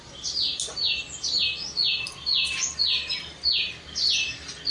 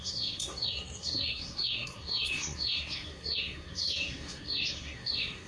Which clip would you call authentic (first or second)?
first